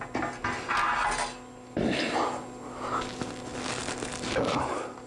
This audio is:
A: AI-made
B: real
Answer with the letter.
B